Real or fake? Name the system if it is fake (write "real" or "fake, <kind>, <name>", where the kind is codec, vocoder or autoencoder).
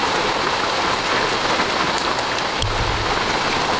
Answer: real